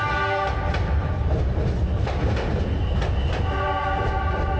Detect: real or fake real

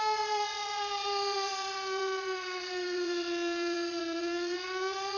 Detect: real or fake fake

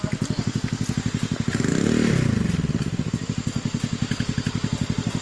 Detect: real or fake real